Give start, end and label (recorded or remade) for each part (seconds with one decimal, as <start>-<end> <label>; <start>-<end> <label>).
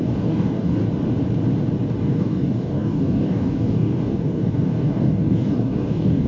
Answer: 0.0-0.8 remade; 0.8-2.0 recorded; 2.0-6.3 remade